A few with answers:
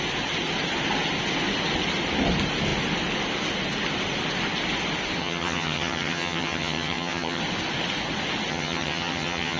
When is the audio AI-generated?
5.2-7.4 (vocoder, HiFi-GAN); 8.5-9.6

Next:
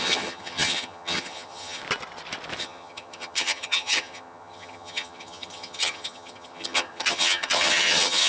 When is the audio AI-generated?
0.0-1.8 (vocoder, HiFi-GAN); 2.6-8.3

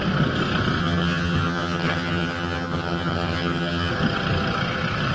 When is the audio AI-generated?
0.8-3.9 (vocoder, HiFi-GAN)

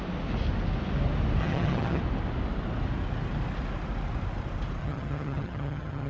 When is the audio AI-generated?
1.4-2.0 (vocoder, HiFi-GAN); 4.8-6.1

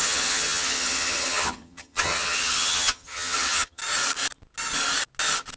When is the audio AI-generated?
0.0-3.8 (vocoder, HiFi-GAN)

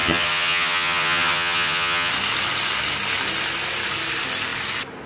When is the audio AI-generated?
0.0-2.1 (vocoder, HiFi-GAN)